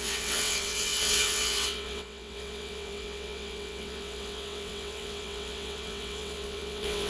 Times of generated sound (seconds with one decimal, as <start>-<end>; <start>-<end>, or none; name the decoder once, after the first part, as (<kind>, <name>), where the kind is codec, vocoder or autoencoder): 0.0-7.1 (vocoder, WaveNeXt)